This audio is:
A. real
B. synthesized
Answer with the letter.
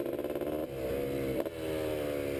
A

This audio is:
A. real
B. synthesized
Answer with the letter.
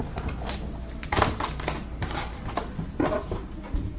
A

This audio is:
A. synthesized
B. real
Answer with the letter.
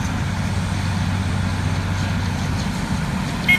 B